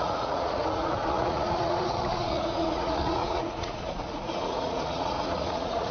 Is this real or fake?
fake